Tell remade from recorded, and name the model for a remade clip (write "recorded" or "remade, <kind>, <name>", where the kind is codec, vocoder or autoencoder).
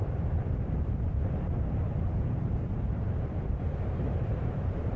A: remade, vocoder, BigVGAN v2